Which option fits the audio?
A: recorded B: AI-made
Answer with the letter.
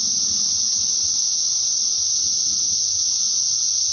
A